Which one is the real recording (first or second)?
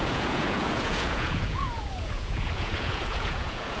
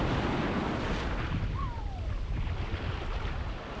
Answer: second